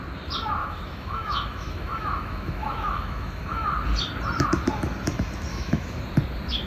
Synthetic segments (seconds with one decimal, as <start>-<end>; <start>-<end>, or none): 0.6-3.7; 5.5-6.0